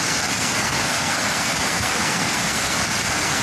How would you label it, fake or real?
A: fake